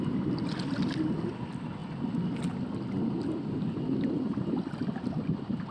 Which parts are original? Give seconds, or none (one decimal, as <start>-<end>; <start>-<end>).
0.0-5.7